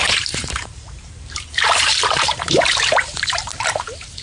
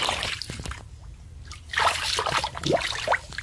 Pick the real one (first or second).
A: second